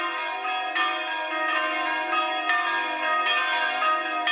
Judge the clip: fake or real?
real